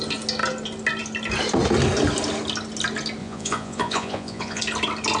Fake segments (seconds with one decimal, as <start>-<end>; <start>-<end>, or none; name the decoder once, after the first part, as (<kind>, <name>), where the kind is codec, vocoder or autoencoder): 3.2-4.6 (vocoder, Vocos)

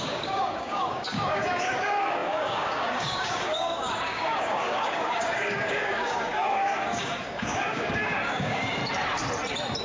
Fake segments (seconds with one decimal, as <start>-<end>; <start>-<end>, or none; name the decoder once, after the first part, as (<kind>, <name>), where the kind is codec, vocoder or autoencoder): 0.0-8.8 (codec, DAC)